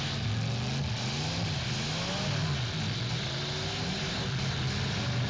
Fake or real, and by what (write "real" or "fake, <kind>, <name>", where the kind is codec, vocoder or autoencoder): real